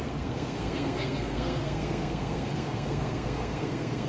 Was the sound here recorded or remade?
remade